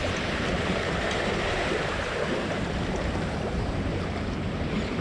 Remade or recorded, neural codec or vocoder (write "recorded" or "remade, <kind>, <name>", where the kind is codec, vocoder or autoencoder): remade, vocoder, BigVGAN v2